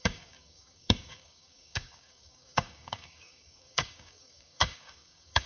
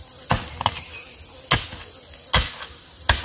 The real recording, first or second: second